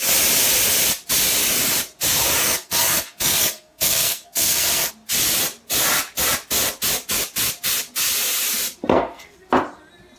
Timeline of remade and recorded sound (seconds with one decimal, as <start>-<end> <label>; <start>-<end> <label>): 0.0-2.4 recorded; 2.4-4.9 remade; 4.9-8.9 recorded; 8.9-9.5 remade; 9.5-10.2 recorded